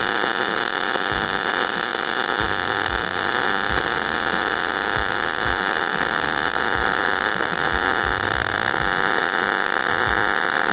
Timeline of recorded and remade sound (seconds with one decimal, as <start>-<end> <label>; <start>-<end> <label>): 0.0-10.7 remade